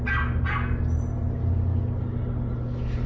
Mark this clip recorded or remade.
recorded